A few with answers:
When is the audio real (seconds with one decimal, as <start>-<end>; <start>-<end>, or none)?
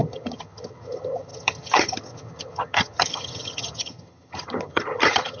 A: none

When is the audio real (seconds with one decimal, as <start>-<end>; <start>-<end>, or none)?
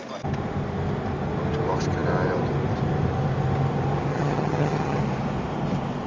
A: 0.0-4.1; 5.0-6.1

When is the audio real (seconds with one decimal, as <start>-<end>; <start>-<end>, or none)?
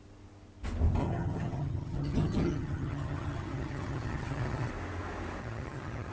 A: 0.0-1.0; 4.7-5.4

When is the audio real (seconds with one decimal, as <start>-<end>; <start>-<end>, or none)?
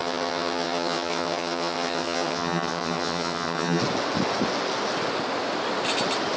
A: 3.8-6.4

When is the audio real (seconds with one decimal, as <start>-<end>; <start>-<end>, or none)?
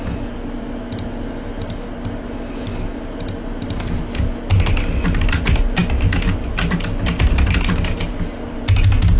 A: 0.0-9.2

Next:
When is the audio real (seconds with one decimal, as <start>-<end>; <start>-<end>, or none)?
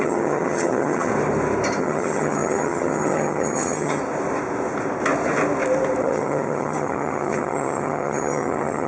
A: 1.1-1.8; 4.0-6.0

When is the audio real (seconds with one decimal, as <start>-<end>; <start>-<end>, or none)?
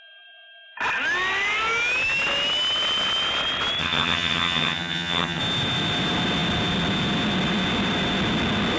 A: 0.0-3.8; 5.4-8.8